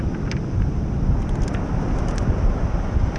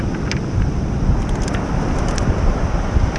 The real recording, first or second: first